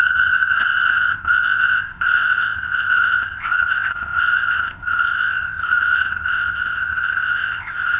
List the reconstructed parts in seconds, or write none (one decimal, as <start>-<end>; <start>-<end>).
0.0-8.0